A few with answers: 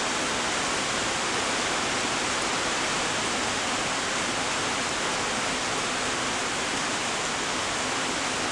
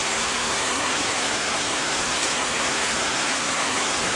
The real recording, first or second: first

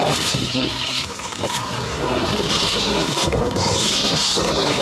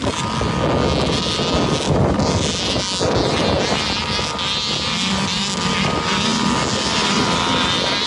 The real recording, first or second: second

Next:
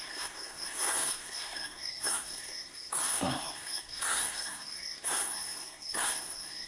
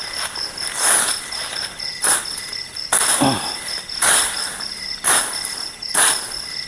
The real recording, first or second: second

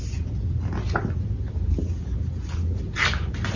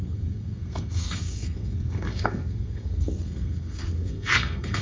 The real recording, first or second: first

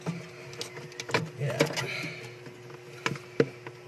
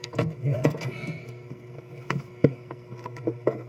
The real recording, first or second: first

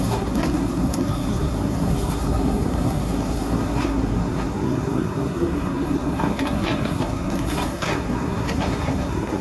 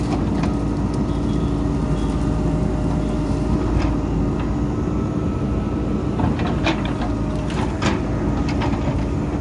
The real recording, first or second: second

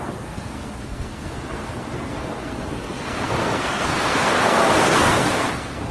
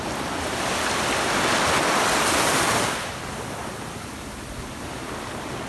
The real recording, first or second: second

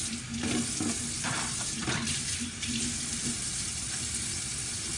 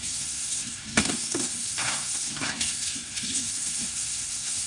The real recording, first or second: first